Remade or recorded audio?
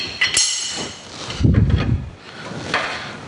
recorded